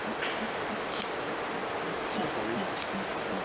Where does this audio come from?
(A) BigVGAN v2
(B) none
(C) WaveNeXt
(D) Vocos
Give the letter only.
B